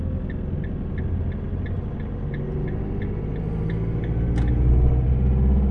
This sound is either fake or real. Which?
real